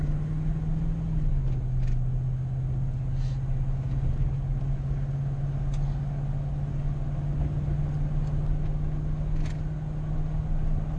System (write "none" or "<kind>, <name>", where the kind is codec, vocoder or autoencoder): none